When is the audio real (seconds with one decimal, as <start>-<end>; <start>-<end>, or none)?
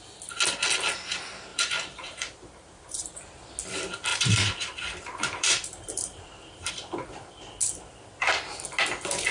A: 0.0-1.5; 3.5-4.1; 6.7-9.3